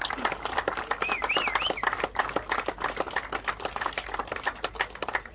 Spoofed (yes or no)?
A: no